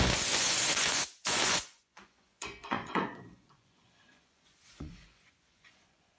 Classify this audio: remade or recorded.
remade